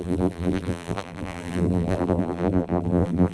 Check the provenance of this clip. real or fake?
fake